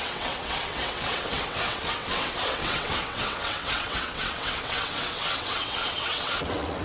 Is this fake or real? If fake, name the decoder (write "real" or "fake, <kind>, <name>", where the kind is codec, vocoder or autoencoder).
fake, vocoder, WaveNeXt